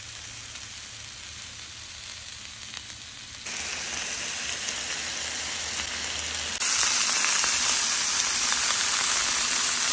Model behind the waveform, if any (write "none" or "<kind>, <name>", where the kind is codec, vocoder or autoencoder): none